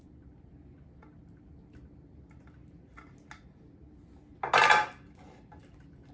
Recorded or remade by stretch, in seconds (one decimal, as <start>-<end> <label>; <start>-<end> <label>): 0.0-6.1 recorded